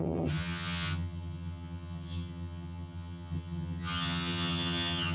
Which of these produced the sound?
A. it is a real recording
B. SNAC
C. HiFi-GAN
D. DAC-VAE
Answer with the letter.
C